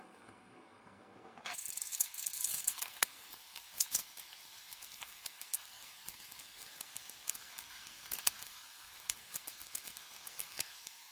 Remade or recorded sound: remade